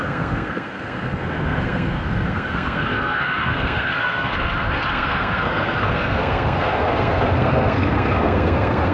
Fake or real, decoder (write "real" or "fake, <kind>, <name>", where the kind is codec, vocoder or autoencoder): fake, codec, SNAC